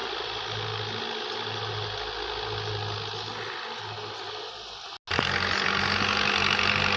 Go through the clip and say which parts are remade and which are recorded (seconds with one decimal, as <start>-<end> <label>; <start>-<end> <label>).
0.0-7.0 recorded

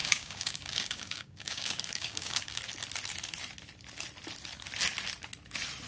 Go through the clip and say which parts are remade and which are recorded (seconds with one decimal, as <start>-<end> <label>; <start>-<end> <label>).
0.0-2.6 remade; 2.6-5.9 recorded

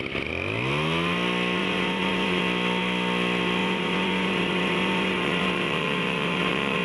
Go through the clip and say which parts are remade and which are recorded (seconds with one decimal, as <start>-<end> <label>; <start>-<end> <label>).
0.0-1.6 recorded; 1.6-2.4 remade; 2.4-3.6 recorded; 3.6-6.8 remade